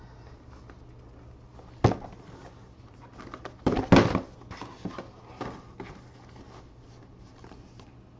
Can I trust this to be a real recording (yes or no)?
yes